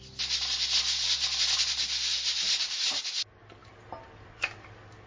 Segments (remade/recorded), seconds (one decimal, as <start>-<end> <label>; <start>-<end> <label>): 0.0-5.1 recorded